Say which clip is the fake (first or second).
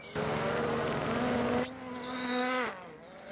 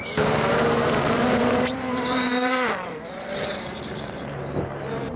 second